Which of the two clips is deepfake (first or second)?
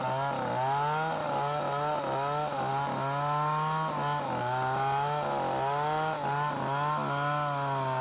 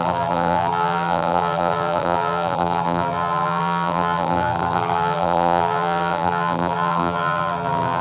second